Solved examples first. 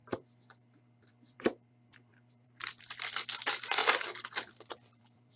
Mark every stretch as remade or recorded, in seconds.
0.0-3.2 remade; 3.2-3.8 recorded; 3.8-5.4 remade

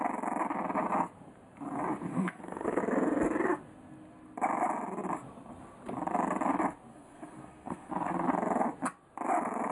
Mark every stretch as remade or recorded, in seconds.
0.0-2.1 recorded; 2.1-2.8 remade; 2.8-6.9 recorded; 6.9-7.9 remade; 7.9-9.7 recorded